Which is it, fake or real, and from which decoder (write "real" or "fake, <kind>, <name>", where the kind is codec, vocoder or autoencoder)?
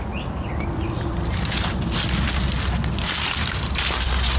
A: real